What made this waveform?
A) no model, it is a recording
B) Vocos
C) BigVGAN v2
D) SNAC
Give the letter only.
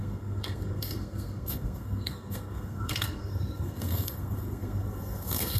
D